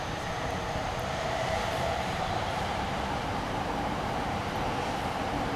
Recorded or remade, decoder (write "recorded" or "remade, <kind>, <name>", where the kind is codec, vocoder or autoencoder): remade, vocoder, BigVGAN v2